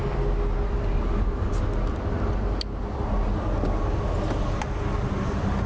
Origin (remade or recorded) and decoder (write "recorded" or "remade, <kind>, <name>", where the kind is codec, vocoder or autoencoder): recorded